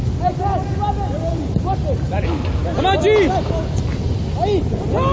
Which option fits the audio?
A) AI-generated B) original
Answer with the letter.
B